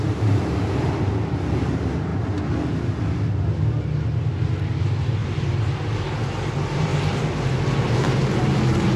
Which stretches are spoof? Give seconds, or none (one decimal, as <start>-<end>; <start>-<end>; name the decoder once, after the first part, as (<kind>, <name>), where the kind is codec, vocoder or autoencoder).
0.0-2.1 (vocoder, BigVGAN v2); 4.8-6.9; 7.8-9.0

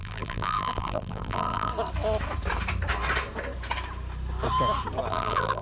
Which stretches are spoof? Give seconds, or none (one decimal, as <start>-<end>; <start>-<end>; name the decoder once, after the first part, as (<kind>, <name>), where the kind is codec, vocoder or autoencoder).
0.0-1.7 (vocoder, BigVGAN v2); 5.1-5.6

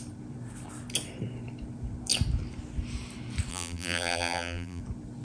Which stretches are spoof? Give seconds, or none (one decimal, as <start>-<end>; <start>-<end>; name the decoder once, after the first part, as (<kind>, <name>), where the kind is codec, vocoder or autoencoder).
3.5-4.8 (vocoder, BigVGAN v2)

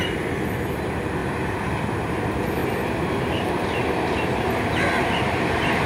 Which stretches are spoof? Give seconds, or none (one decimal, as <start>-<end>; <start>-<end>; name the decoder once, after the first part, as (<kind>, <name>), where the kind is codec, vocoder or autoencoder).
1.2-1.8 (vocoder, BigVGAN v2)

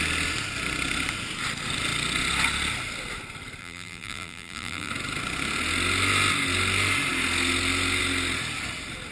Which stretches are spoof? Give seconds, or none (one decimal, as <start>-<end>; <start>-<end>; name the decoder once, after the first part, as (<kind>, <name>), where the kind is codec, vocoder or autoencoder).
3.6-4.9 (vocoder, BigVGAN v2)

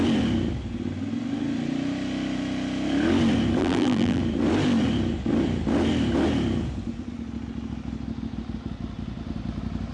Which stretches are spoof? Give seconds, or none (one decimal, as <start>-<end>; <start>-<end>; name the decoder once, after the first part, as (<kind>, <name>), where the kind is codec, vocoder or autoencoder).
3.6-4.2 (vocoder, BigVGAN v2)